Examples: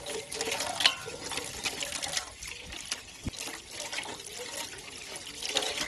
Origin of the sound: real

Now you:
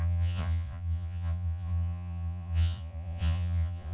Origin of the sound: fake